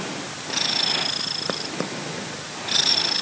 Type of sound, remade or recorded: recorded